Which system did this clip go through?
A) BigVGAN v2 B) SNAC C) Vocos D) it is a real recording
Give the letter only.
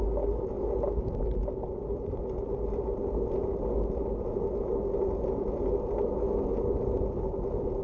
D